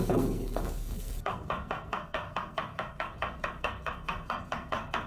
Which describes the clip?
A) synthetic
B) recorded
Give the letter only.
A